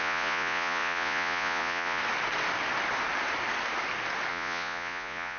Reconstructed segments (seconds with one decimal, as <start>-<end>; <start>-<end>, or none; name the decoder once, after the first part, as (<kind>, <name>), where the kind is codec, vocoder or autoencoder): 0.0-2.0 (vocoder, Vocos); 4.3-5.4